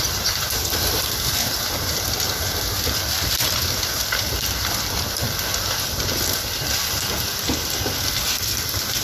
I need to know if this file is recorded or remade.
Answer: remade